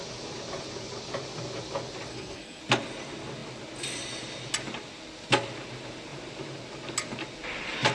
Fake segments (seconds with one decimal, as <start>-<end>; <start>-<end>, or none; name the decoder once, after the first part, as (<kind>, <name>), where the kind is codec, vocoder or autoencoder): 2.1-2.6 (codec, SNAC)